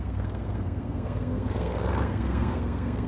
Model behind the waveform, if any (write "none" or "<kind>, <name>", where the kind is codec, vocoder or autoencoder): codec, SNAC